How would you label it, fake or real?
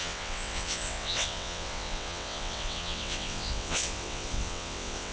fake